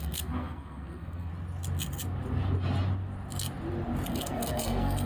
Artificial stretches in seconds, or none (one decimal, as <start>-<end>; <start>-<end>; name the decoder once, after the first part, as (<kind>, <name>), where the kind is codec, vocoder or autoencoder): 0.0-1.3 (codec, SNAC); 4.1-5.1